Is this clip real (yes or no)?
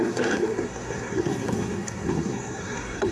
no